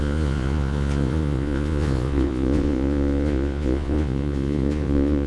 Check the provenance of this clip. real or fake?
fake